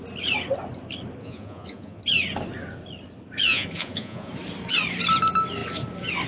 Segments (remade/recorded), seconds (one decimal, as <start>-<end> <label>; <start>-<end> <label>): 0.0-1.2 recorded; 1.2-2.0 remade; 2.0-3.5 recorded; 3.5-4.3 remade; 4.3-6.3 recorded